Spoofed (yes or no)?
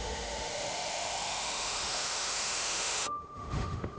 yes